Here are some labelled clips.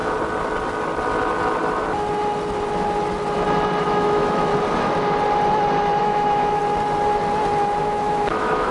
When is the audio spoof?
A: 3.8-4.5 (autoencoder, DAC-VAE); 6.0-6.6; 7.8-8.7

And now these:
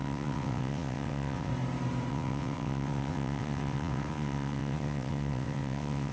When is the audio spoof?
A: 0.0-1.5 (vocoder, WaveNeXt); 2.1-6.1

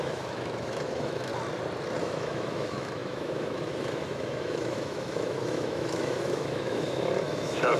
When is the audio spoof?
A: 0.0-1.3 (autoencoder, DAC-VAE); 2.0-7.8

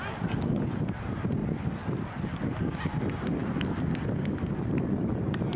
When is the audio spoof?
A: none